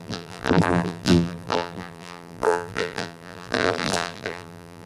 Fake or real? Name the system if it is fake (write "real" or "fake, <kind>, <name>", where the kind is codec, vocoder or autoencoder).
fake, vocoder, BigVGAN v2